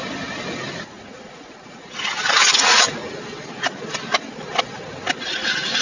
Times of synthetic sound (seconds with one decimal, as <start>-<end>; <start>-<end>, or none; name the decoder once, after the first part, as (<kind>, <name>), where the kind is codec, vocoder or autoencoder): 0.7-3.0 (vocoder, Vocos)